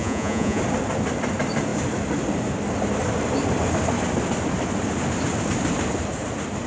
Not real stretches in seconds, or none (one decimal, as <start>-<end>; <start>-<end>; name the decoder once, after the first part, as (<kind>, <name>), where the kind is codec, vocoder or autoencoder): 0.0-0.6 (vocoder, Vocos)